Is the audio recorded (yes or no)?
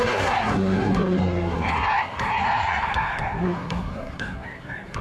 no